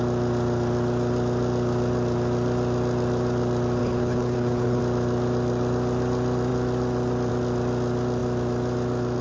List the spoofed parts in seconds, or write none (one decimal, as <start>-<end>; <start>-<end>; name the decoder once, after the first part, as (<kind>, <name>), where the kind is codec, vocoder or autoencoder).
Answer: 3.8-4.8 (codec, HILCodec)